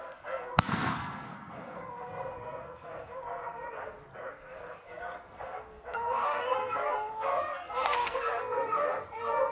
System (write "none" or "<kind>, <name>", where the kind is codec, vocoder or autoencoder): codec, SNAC